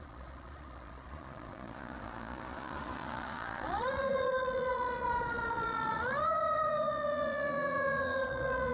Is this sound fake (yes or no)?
yes